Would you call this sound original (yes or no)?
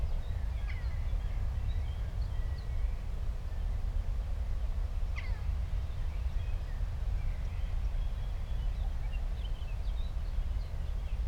yes